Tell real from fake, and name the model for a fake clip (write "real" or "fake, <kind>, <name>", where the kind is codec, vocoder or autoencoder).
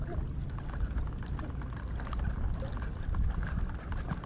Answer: real